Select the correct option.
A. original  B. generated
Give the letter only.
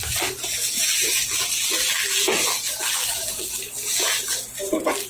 B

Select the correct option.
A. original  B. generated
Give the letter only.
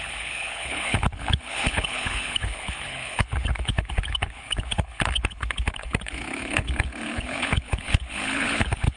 B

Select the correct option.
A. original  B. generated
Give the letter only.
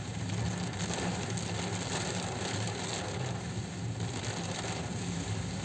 A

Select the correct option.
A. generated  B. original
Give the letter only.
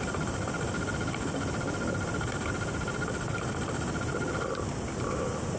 B